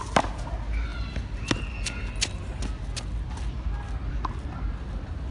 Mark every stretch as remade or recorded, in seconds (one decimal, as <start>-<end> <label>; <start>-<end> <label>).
0.0-5.3 recorded